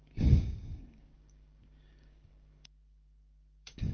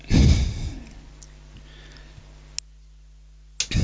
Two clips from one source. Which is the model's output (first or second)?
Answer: first